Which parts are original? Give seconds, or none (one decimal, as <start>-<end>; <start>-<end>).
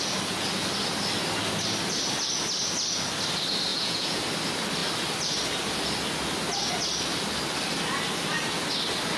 0.0-3.7; 4.2-9.2